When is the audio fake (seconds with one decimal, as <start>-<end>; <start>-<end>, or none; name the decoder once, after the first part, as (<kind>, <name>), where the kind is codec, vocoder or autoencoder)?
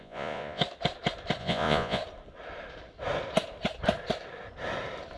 0.0-0.6 (vocoder, Vocos); 1.4-2.0